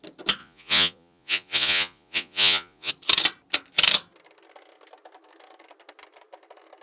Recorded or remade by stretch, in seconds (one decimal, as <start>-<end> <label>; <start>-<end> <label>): 0.0-0.4 recorded; 0.4-2.9 remade; 2.9-6.8 recorded